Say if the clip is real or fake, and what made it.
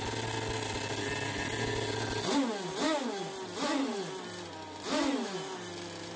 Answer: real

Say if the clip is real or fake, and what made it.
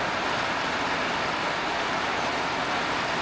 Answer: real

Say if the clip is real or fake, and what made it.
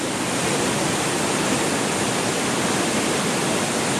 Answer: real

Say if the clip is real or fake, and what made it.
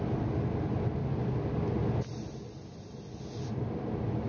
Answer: real